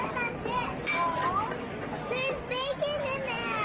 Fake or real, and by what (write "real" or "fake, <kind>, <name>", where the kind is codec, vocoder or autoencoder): real